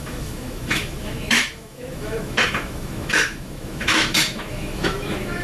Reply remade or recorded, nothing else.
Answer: remade